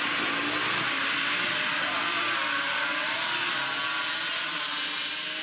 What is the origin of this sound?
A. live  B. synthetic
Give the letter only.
A